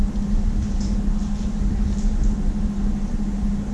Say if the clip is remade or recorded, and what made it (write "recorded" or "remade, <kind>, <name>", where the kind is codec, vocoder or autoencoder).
recorded